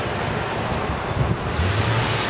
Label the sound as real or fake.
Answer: real